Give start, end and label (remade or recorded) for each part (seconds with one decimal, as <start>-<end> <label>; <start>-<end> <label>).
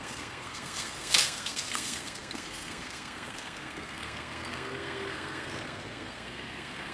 0.0-6.9 remade